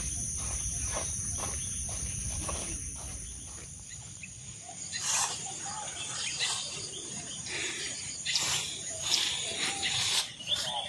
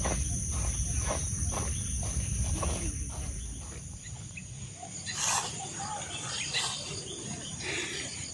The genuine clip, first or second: second